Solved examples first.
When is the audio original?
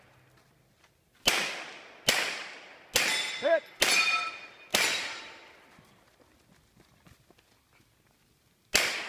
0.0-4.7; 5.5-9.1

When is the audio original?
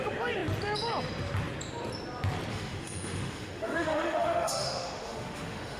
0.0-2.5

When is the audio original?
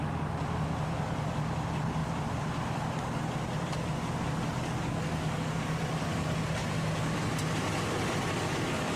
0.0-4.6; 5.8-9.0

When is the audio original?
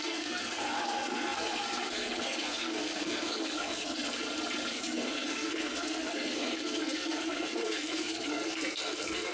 4.1-4.7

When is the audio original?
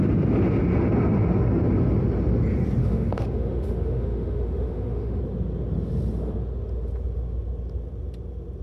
0.0-2.8; 5.2-8.6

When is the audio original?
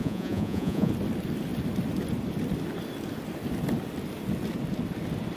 0.9-5.4